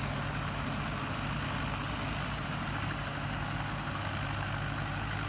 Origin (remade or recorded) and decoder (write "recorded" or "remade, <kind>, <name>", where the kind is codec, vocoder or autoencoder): recorded